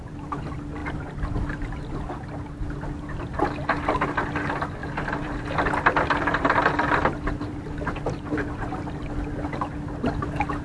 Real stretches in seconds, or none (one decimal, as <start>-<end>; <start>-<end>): 0.0-4.8; 8.9-10.6